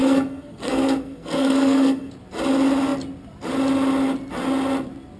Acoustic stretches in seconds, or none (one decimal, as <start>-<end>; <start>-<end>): 2.1-5.2